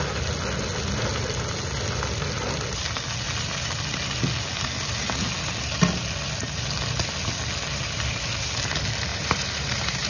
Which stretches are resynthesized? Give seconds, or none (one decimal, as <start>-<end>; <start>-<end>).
9.1-10.1